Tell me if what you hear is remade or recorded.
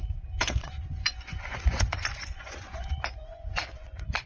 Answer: remade